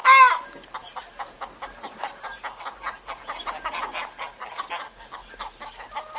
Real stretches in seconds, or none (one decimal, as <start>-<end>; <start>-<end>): 0.0-6.2